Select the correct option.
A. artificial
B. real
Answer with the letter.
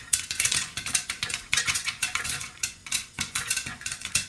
A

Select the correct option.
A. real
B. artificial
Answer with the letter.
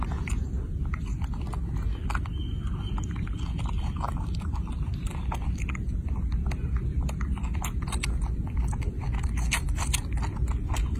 A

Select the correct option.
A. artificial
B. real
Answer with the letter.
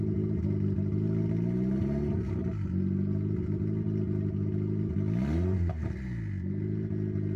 B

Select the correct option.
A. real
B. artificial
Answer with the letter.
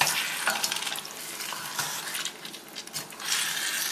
A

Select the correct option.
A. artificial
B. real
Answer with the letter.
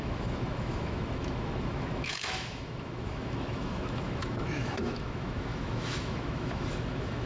A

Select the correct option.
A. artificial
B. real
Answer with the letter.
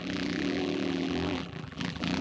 A